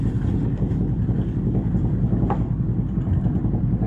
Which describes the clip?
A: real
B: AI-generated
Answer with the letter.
A